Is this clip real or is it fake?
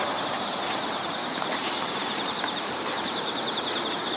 fake